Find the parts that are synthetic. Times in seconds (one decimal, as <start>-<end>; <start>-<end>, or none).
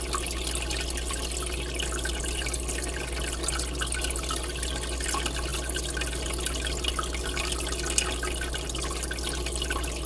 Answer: none